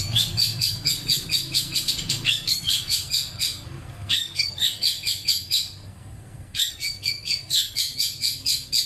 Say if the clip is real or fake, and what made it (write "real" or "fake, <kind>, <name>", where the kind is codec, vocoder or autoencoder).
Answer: fake, codec, SNAC